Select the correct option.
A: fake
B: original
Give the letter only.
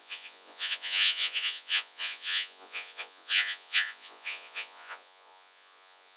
A